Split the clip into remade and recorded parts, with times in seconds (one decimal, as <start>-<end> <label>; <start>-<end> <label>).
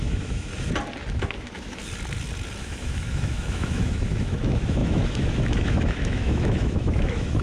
0.0-0.5 remade; 0.5-1.1 recorded; 1.1-1.8 remade; 1.8-2.6 recorded; 2.6-7.4 remade